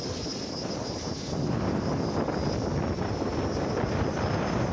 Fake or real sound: real